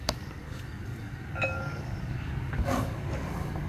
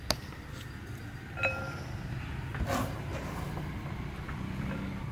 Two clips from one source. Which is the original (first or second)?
second